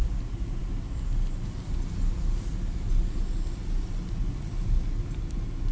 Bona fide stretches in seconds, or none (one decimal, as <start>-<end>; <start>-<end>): 0.0-5.7